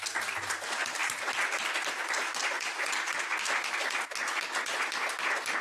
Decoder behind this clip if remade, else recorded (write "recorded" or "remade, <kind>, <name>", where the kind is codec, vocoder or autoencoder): recorded